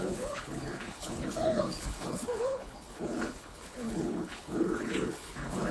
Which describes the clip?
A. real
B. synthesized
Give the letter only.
B